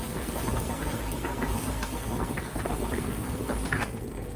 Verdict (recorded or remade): remade